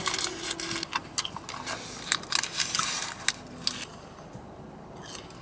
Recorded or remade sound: recorded